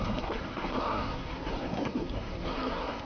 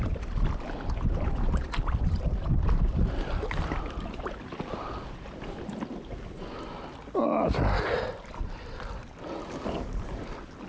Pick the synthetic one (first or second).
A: first